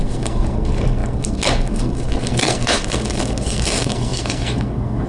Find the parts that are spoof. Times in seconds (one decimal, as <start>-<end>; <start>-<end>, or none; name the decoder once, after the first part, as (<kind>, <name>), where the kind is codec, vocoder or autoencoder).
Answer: 0.0-5.1 (codec, SNAC)